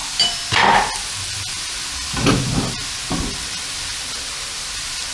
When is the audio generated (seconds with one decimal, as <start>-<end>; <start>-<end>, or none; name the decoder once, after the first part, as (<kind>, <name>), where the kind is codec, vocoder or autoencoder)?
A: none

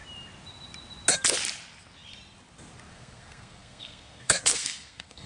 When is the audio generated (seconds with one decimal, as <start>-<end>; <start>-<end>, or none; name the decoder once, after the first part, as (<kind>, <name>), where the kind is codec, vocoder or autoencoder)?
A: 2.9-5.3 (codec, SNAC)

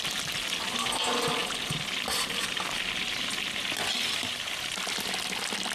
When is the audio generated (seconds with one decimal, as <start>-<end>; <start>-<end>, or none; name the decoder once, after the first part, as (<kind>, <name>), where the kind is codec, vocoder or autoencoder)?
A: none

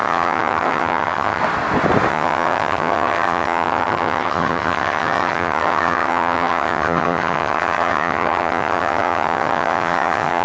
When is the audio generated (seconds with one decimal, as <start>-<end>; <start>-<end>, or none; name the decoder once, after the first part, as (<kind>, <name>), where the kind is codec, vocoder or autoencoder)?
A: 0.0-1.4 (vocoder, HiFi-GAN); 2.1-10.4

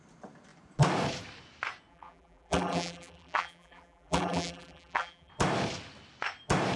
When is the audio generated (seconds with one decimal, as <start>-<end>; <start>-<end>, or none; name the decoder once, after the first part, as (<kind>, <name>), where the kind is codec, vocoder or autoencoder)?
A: 1.9-5.3 (vocoder, BigVGAN v2)